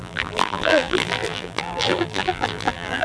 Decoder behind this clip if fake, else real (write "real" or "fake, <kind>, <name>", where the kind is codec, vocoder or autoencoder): fake, vocoder, BigVGAN v2